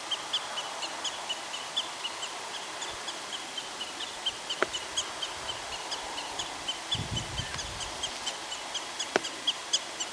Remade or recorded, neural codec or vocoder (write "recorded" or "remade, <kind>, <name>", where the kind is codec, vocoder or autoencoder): recorded